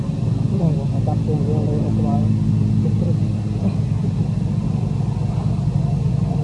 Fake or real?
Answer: real